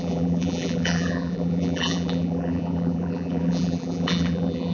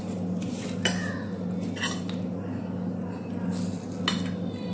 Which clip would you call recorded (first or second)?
second